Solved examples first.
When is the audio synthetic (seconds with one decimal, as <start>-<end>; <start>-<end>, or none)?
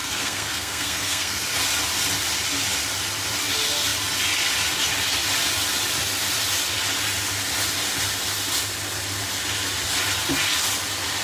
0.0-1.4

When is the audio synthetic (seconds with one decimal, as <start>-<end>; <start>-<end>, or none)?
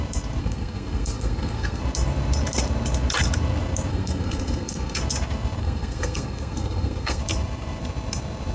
0.4-1.8; 3.9-5.0; 5.6-7.2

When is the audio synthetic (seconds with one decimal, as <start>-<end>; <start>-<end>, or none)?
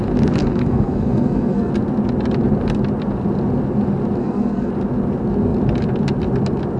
0.4-1.7; 4.2-4.7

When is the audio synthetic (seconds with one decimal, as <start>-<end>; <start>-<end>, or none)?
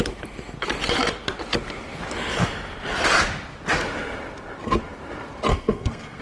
5.5-6.2